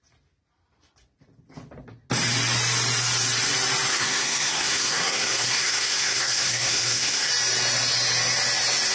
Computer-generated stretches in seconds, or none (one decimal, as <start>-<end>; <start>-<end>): 3.9-7.3